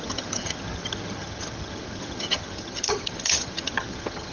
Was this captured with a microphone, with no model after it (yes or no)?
no